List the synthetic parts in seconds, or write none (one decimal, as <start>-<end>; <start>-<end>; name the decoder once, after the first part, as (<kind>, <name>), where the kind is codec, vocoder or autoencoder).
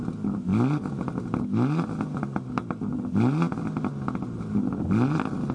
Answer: none